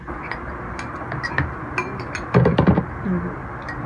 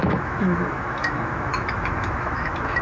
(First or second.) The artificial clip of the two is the second